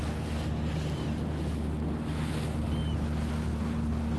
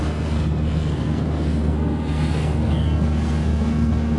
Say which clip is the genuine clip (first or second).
first